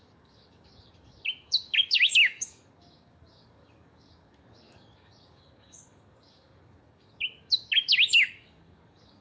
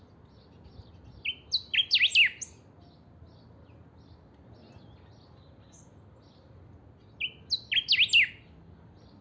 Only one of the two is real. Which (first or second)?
second